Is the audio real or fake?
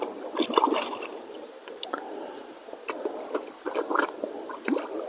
fake